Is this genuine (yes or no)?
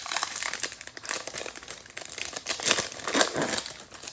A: yes